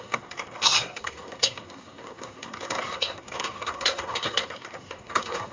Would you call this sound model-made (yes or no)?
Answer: yes